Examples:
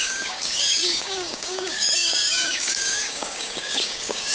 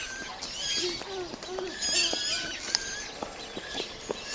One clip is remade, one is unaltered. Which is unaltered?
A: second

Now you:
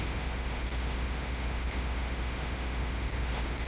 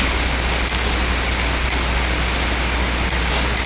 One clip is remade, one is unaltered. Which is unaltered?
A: second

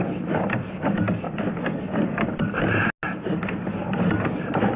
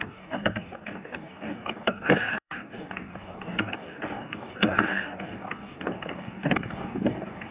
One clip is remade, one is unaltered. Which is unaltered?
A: first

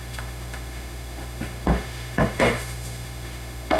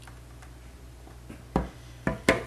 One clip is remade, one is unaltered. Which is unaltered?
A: second